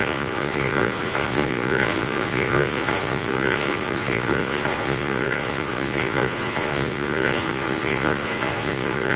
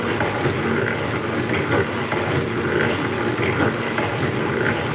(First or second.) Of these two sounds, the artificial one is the first